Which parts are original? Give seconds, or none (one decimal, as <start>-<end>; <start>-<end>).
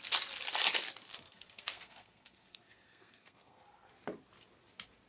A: 0.0-1.1; 3.9-5.1